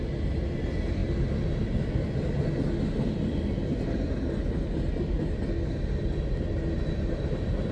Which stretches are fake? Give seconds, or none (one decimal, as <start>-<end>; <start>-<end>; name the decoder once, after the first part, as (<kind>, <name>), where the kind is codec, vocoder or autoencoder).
none